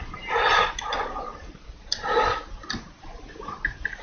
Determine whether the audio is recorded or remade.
recorded